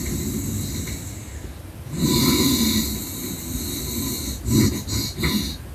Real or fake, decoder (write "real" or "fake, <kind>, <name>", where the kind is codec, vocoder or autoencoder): real